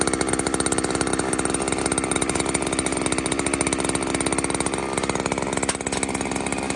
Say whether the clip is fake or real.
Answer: real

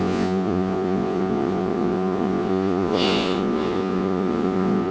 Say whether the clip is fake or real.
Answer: fake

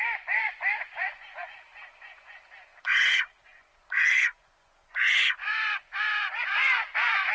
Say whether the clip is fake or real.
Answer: fake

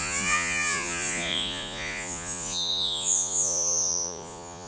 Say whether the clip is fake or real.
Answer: fake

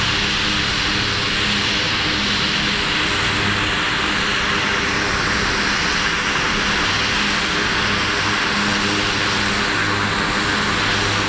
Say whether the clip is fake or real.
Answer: real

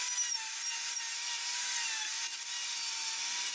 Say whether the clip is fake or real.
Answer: real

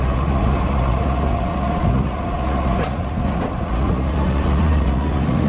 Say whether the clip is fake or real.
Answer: fake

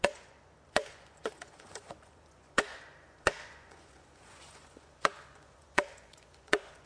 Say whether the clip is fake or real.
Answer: fake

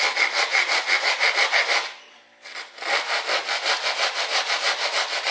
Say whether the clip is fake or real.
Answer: real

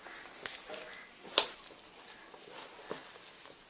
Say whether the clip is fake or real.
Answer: real